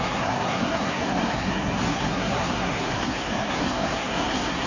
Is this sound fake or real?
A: fake